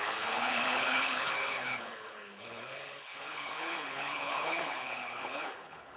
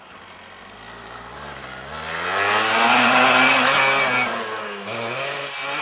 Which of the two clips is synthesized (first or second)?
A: first